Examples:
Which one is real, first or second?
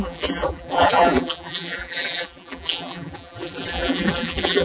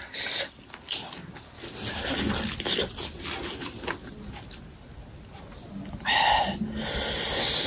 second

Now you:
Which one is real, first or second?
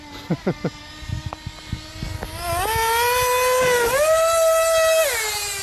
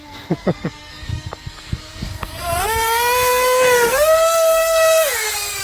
first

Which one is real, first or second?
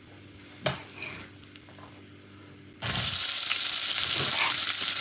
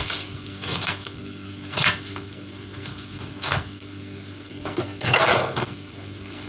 first